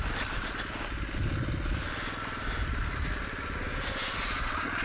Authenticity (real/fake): real